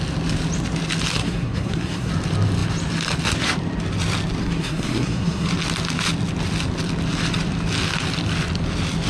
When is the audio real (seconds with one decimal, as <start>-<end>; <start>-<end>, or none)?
0.0-1.2; 2.1-4.4; 5.5-9.1